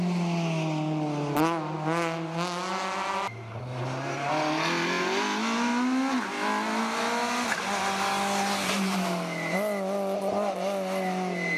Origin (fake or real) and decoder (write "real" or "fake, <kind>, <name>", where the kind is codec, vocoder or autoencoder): real